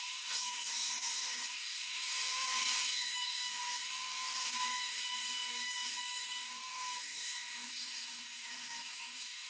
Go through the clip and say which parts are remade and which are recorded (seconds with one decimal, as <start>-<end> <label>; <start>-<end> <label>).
0.0-9.5 remade